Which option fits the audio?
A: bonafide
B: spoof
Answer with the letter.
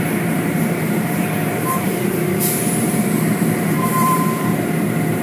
B